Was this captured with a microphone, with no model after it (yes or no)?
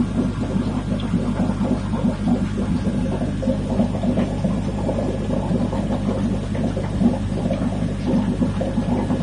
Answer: yes